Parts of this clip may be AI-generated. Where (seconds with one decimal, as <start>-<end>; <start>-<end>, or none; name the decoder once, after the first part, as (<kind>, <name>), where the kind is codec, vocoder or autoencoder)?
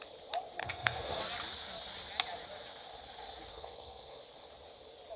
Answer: 0.6-1.2 (codec, SNAC); 3.5-4.2